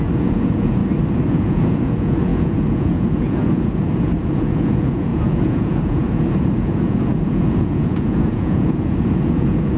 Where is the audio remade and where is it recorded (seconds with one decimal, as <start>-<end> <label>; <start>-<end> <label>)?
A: 0.0-0.8 remade; 0.8-1.3 recorded; 1.3-9.8 remade